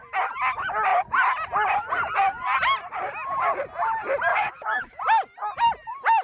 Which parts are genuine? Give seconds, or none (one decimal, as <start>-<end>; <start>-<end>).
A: 0.0-4.3; 5.0-6.2